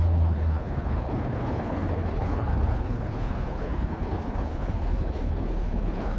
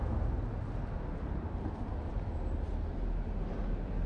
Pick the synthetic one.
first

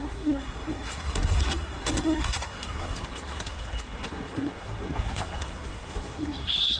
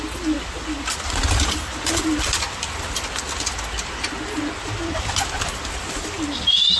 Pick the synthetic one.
first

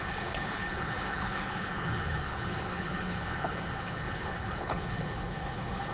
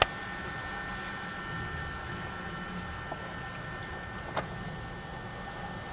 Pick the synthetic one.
first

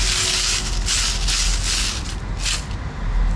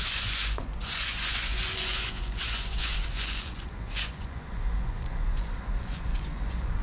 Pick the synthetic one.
second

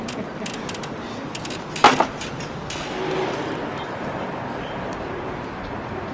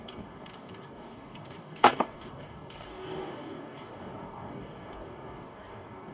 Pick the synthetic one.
second